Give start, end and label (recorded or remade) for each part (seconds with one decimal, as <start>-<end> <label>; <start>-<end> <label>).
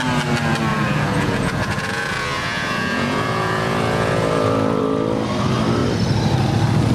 0.0-0.7 recorded; 0.7-4.8 remade; 4.8-6.9 recorded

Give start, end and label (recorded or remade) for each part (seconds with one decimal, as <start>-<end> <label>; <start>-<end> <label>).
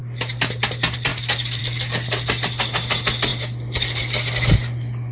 0.0-5.1 recorded